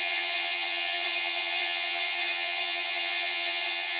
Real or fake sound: fake